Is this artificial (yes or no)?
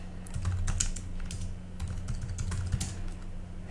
no